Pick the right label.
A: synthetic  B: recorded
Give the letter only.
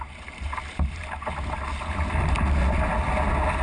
B